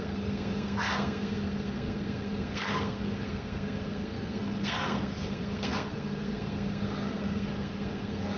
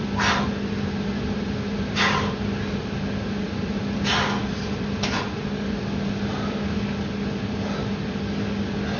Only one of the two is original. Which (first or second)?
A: second